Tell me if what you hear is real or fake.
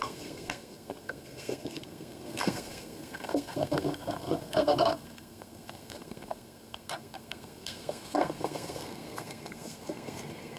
fake